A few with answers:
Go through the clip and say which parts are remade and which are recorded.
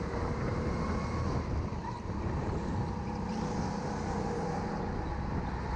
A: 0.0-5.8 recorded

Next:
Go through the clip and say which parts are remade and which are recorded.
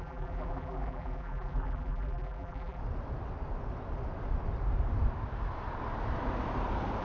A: 0.0-2.8 remade; 2.8-7.0 recorded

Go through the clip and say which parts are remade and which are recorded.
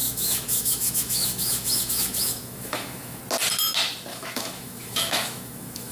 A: 0.0-3.2 remade; 3.2-4.1 recorded; 4.1-5.9 remade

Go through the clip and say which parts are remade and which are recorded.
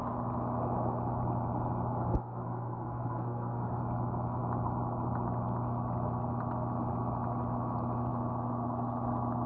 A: 0.0-2.1 recorded; 2.1-3.8 remade; 3.8-9.5 recorded